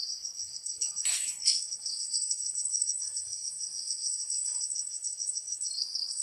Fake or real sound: fake